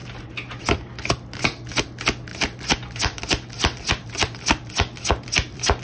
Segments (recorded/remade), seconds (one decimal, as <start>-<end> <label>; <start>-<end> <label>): 0.0-2.3 recorded; 2.3-5.8 remade